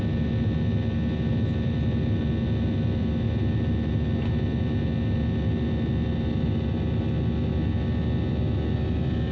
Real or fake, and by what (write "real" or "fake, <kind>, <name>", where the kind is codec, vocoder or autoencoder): real